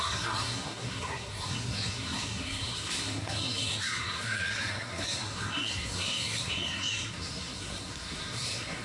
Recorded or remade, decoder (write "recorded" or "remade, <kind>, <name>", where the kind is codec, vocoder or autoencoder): remade, codec, SNAC